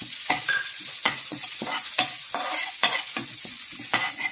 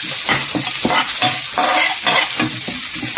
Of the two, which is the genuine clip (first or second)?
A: second